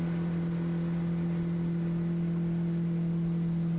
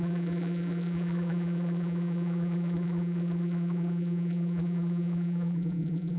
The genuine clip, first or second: first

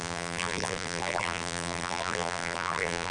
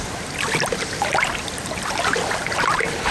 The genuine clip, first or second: second